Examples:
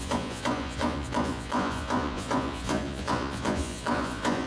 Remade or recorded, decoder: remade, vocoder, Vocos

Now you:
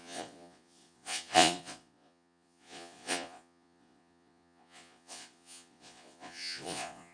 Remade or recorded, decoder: remade, vocoder, Vocos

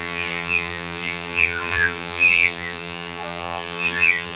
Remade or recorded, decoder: remade, vocoder, BigVGAN v2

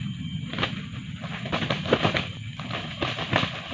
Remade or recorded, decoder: remade, vocoder, BigVGAN v2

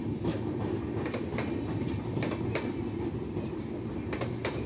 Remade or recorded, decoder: recorded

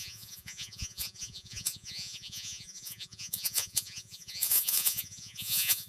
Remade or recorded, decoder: remade, vocoder, Vocos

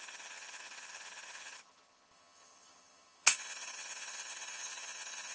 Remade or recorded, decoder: remade, vocoder, HiFi-GAN